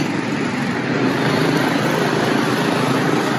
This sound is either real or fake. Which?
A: fake